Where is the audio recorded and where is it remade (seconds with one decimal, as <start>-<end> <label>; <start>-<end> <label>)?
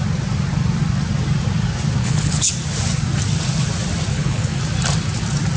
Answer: 0.0-2.0 recorded; 2.0-2.5 remade; 2.5-4.1 recorded; 4.1-4.6 remade; 4.6-5.6 recorded